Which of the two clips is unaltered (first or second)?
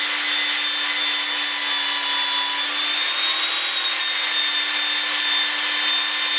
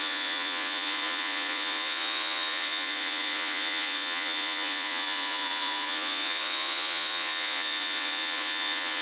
first